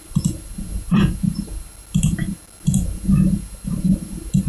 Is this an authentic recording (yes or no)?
yes